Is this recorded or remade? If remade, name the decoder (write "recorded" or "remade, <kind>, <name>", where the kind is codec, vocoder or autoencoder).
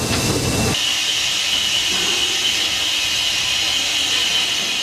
recorded